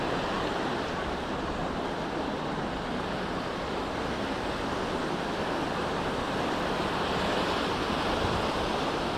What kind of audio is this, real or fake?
real